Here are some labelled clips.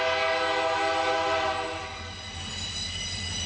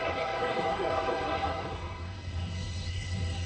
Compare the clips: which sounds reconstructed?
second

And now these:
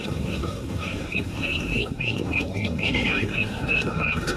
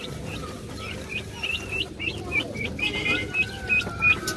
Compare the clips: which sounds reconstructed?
first